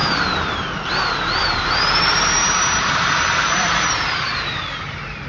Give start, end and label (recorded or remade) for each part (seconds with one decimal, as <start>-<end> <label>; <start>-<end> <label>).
0.0-0.9 remade; 0.9-1.4 recorded; 1.4-4.6 remade; 4.6-5.3 recorded